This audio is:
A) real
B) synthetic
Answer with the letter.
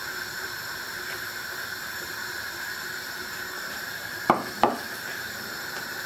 B